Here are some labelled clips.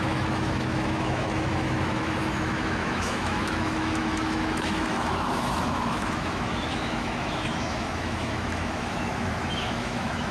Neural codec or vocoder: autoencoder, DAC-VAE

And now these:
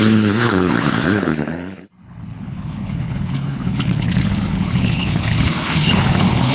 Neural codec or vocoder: codec, HILCodec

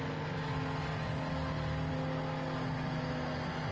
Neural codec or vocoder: none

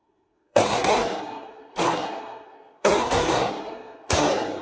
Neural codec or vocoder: codec, SNAC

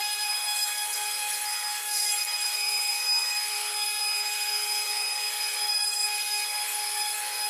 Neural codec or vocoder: codec, SNAC